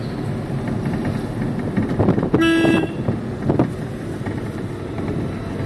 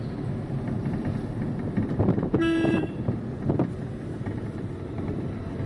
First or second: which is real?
first